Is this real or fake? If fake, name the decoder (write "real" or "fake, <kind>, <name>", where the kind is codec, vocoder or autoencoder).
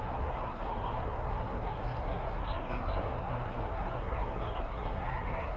fake, codec, SNAC